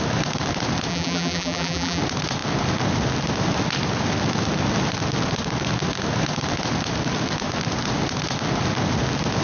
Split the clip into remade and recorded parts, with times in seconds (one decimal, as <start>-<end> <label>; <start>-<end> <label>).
0.0-0.9 recorded; 0.9-2.0 remade; 2.0-9.4 recorded